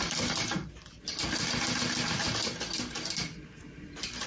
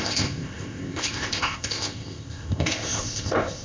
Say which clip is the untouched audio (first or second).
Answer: first